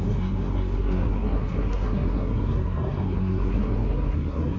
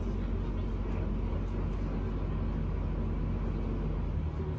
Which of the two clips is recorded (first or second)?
second